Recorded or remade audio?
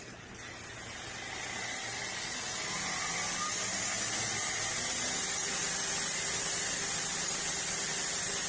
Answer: recorded